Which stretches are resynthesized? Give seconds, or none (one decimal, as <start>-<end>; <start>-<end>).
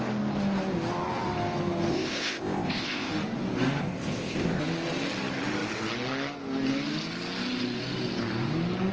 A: 1.9-3.1; 3.8-4.6